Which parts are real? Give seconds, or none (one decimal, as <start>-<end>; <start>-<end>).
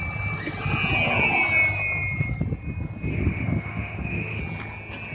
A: 0.0-3.1; 4.4-5.1